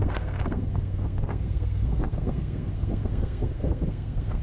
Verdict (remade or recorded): remade